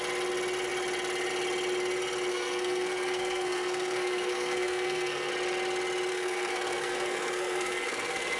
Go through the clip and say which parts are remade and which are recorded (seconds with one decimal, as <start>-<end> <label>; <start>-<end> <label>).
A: 0.0-2.3 recorded; 2.3-5.3 remade; 5.3-6.1 recorded; 6.1-8.4 remade